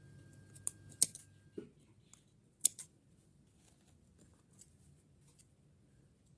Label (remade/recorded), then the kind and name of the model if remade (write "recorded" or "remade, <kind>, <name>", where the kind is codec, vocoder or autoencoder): recorded